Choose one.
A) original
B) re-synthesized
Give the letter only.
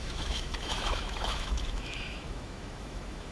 B